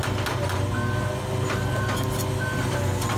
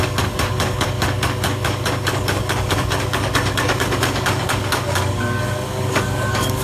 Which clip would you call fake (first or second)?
second